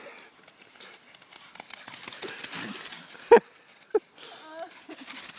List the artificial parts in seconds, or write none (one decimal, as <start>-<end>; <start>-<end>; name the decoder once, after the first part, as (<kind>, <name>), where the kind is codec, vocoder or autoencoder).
none